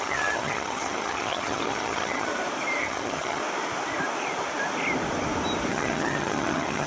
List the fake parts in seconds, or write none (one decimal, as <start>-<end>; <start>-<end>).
0.0-2.3; 2.8-3.4; 5.7-6.9